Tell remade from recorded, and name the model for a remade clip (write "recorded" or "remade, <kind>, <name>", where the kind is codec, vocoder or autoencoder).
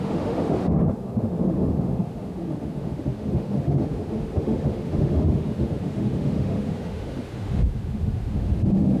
remade, autoencoder, DAC-VAE